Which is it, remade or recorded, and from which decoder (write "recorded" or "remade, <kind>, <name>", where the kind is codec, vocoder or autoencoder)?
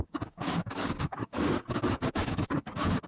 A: remade, codec, DAC